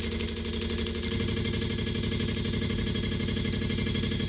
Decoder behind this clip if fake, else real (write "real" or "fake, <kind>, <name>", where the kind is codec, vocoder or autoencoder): real